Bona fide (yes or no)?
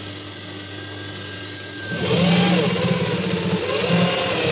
yes